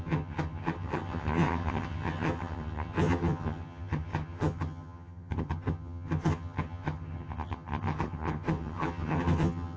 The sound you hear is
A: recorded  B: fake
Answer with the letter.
B